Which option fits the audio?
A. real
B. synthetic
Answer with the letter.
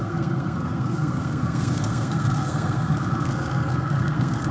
B